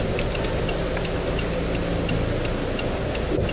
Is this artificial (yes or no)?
no